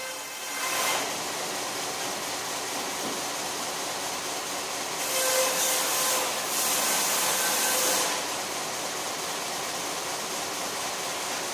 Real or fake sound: real